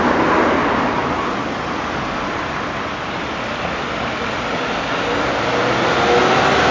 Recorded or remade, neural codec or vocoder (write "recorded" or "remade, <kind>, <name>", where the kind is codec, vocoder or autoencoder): recorded